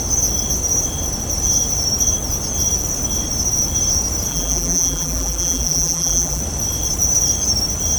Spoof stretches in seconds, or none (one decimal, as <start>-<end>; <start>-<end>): 4.3-6.4